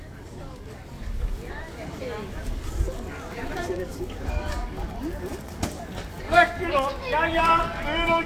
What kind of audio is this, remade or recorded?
remade